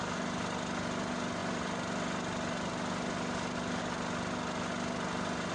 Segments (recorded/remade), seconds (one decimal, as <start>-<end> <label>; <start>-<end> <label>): 0.0-5.5 recorded